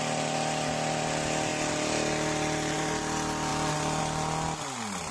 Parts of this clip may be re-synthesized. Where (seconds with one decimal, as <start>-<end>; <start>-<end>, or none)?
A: none

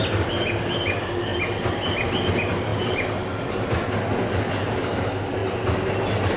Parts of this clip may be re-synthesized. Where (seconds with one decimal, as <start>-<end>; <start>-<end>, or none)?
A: none

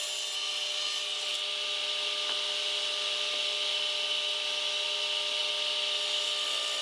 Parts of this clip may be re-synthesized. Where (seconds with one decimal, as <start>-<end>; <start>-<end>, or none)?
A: none

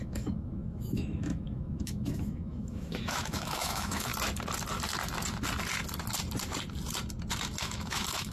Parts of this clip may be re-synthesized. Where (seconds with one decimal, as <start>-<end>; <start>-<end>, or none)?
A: 0.0-4.1; 7.6-8.3

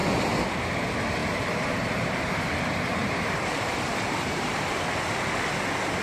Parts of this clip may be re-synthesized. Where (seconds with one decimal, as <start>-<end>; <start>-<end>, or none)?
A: 1.2-4.8

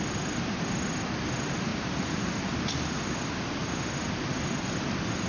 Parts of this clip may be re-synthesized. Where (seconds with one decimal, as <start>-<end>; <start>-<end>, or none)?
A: 1.7-2.6

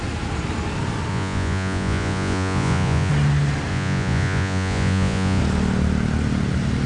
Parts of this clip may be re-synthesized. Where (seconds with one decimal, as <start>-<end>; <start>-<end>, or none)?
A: 1.1-3.1; 3.7-5.4